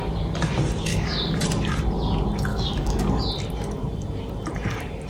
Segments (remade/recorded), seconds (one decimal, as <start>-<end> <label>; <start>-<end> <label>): 0.0-0.9 recorded; 0.9-1.4 remade; 1.4-2.5 recorded; 2.5-3.1 remade; 3.1-5.1 recorded